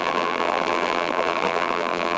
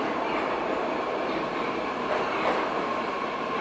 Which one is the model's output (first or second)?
first